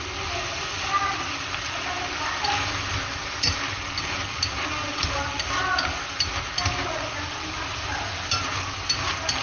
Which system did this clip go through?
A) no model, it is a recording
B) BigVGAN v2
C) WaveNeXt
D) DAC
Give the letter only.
A